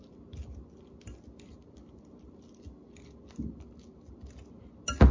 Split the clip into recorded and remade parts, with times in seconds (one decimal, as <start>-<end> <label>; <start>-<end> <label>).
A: 0.0-5.1 recorded